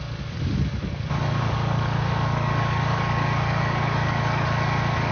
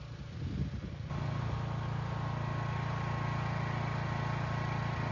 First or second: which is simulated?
first